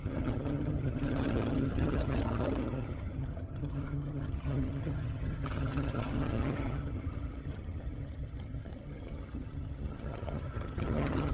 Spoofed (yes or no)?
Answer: yes